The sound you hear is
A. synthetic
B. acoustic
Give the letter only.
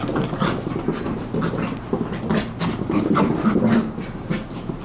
B